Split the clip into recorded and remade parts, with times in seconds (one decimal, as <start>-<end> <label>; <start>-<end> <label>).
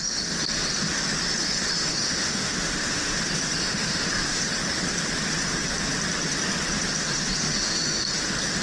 0.0-1.9 recorded; 1.9-3.2 remade; 3.2-3.6 recorded; 3.6-4.4 remade; 4.4-7.5 recorded; 7.5-8.1 remade; 8.1-8.6 recorded